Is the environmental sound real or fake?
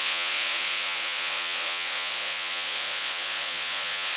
fake